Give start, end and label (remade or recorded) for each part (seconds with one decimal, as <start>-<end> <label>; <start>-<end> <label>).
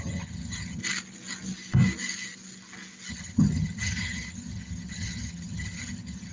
0.0-0.8 remade; 0.8-3.1 recorded; 3.1-6.3 remade